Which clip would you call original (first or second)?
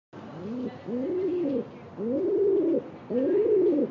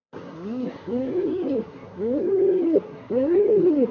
first